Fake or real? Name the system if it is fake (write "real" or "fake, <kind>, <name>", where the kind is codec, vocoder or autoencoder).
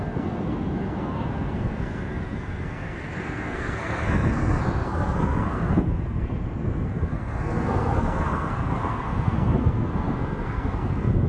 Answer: fake, codec, SNAC